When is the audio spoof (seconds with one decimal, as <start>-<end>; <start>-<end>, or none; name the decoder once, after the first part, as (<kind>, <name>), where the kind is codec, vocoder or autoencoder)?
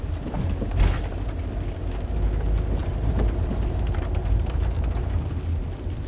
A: 2.8-5.2 (vocoder, BigVGAN v2)